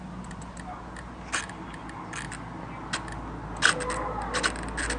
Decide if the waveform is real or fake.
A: real